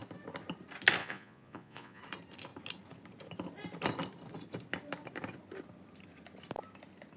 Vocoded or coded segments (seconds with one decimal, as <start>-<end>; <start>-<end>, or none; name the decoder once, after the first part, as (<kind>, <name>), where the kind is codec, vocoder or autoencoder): 1.0-2.0 (vocoder, Vocos)